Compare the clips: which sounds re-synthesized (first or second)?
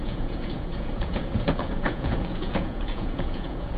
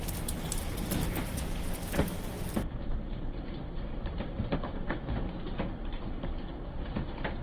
first